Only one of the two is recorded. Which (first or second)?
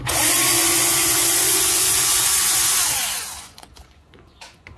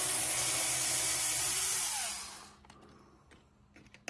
second